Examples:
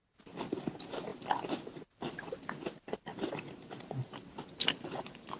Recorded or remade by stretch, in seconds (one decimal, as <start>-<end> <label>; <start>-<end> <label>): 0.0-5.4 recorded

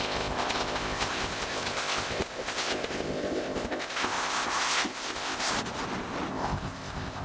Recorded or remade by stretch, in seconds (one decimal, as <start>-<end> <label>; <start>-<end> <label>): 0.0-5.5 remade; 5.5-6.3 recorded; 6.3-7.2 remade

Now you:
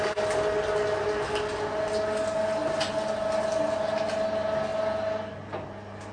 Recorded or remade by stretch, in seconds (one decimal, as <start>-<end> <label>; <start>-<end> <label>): 0.0-6.1 recorded